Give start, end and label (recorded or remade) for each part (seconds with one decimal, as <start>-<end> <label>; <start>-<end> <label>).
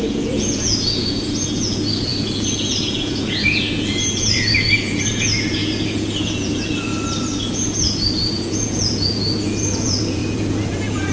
0.0-6.9 remade; 6.9-7.5 recorded; 7.5-11.1 remade